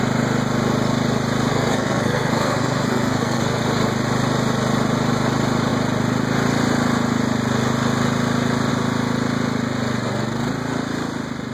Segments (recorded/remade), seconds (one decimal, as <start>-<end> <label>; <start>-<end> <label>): 0.0-1.5 recorded; 1.5-3.6 remade; 3.6-11.5 recorded